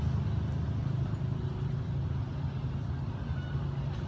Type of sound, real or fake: real